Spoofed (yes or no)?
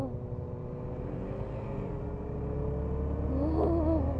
no